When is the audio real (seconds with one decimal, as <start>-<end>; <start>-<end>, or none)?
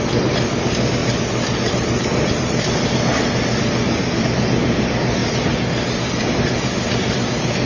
0.0-1.0; 4.2-5.2; 6.2-7.7